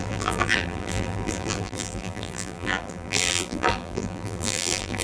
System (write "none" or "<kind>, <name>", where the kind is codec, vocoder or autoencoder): vocoder, BigVGAN v2